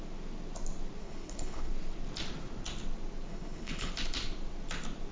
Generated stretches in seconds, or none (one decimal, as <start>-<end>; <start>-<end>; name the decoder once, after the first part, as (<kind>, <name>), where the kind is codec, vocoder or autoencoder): 1.0-1.7 (codec, HILCodec); 3.3-3.9

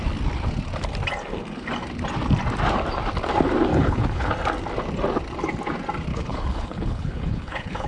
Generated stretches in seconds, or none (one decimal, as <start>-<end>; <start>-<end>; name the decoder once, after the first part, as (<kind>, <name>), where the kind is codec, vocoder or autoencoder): 3.7-4.3 (codec, HILCodec); 6.1-7.9

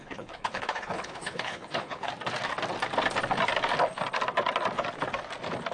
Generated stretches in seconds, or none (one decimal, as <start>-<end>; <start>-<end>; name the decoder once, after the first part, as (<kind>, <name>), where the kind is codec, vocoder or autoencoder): 0.0-2.1 (codec, HILCodec)